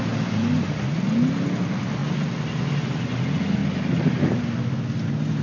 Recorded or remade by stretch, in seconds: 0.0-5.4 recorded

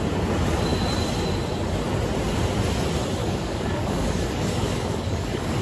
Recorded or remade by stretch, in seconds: 0.0-3.2 recorded; 3.2-5.6 remade